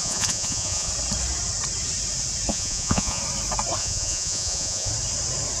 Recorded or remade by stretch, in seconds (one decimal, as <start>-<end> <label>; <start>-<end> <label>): 0.0-0.9 remade; 0.9-2.5 recorded; 2.5-3.2 remade; 3.2-3.8 recorded; 3.8-4.9 remade; 4.9-5.6 recorded